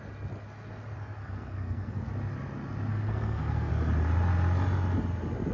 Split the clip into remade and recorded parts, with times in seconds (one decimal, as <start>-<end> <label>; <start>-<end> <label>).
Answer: 0.0-1.2 recorded; 1.2-2.1 remade; 2.1-2.9 recorded; 2.9-3.7 remade; 3.7-5.5 recorded